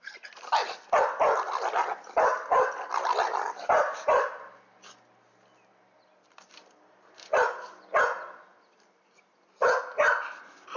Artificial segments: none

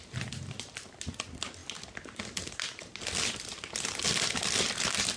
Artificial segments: none